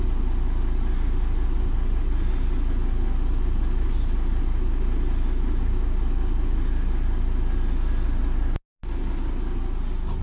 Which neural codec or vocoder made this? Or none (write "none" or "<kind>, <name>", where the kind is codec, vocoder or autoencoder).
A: none